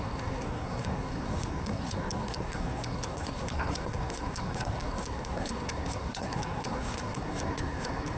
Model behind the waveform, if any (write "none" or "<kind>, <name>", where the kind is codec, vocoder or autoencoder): codec, SNAC